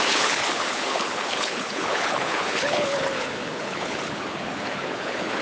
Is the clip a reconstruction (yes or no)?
yes